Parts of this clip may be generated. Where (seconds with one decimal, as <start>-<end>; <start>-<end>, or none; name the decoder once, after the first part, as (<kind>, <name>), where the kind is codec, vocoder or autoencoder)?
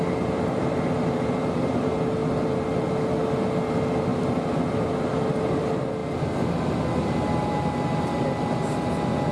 none